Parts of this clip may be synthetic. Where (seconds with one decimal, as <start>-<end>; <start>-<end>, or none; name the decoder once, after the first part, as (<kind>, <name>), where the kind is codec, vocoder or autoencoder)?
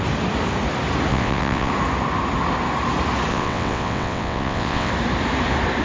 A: 1.1-1.7 (vocoder, WaveNeXt); 3.3-4.9